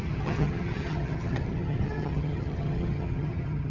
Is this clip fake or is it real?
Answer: fake